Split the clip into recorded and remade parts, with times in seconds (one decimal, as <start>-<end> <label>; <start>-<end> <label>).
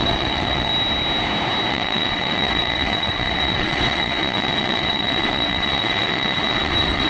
0.0-0.7 remade; 0.7-1.7 recorded; 1.7-7.1 remade